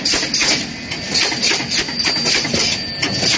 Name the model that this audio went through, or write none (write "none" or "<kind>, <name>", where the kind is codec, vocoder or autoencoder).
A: none